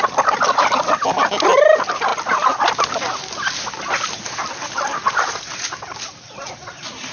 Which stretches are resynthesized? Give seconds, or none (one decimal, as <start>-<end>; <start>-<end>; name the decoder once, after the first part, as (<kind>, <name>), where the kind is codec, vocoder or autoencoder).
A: none